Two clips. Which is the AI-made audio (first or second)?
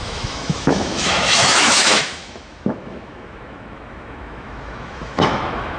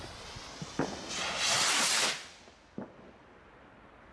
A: first